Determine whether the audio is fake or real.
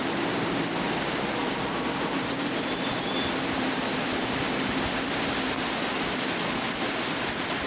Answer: real